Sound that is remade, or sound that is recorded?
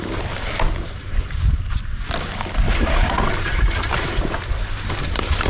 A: remade